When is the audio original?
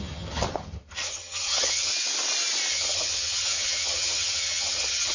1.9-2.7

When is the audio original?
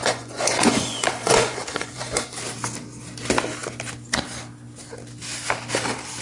2.3-6.2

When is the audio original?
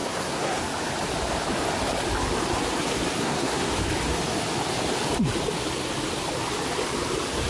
0.6-3.2; 3.7-7.5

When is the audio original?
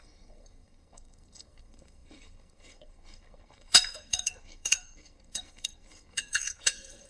none